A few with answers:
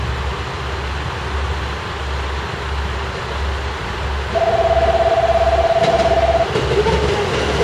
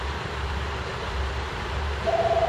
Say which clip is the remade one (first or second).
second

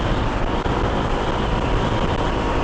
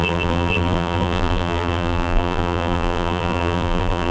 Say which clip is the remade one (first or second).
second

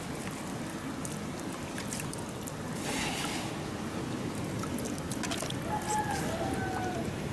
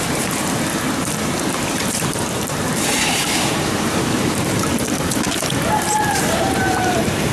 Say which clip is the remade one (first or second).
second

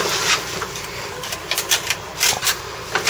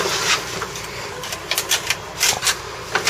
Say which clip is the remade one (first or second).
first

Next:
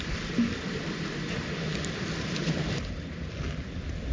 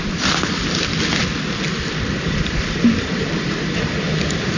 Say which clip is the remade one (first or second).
second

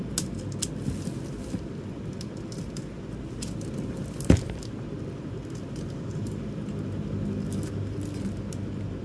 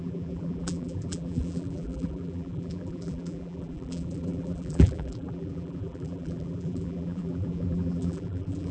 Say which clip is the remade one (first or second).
second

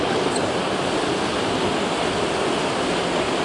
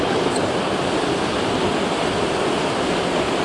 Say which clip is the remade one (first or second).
second